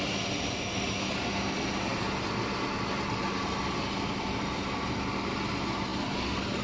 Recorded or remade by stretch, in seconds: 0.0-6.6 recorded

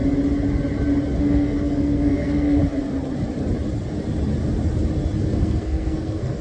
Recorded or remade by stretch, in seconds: 0.0-1.2 recorded; 1.2-2.6 remade; 2.6-5.2 recorded; 5.2-6.4 remade

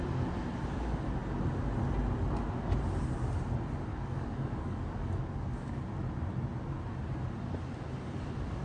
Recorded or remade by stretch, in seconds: 0.0-3.9 recorded; 3.9-5.8 remade; 5.8-8.6 recorded

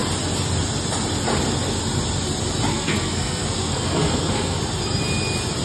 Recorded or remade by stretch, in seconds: 0.0-2.7 recorded; 2.7-4.6 remade; 4.6-5.6 recorded

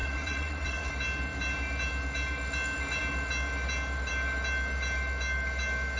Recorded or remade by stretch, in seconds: 0.0-0.9 remade; 0.9-6.0 recorded